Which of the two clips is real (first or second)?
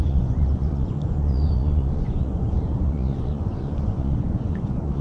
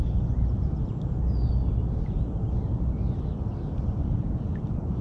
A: second